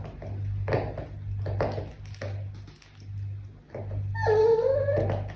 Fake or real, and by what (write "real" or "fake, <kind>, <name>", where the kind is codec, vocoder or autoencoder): real